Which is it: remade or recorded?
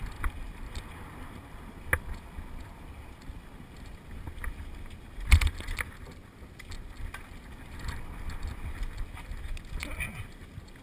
recorded